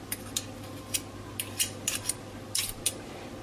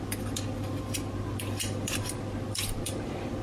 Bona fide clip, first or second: first